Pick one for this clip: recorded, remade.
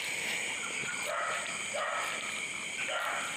recorded